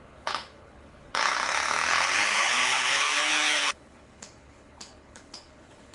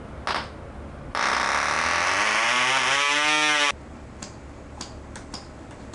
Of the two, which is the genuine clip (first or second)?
second